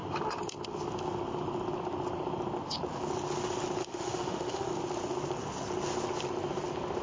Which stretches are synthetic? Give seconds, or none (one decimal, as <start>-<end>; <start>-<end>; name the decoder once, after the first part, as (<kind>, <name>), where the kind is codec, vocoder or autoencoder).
3.8-4.7 (autoencoder, DAC-VAE)

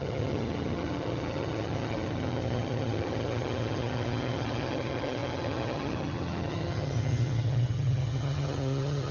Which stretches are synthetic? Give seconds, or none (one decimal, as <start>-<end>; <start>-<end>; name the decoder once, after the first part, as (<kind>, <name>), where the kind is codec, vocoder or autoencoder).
0.0-9.1 (vocoder, HiFi-GAN)